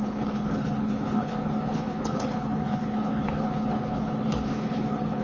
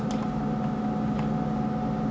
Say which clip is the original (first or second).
second